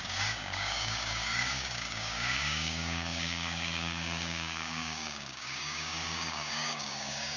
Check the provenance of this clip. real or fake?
fake